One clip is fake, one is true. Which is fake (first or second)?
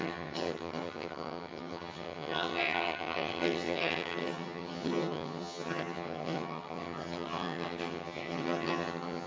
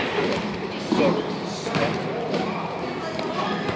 first